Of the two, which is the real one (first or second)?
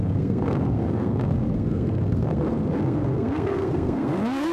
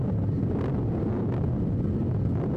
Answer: second